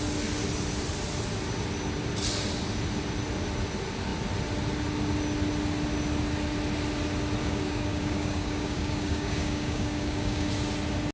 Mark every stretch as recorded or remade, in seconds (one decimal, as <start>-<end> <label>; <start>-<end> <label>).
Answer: 0.0-7.4 recorded; 7.4-10.5 remade; 10.5-11.1 recorded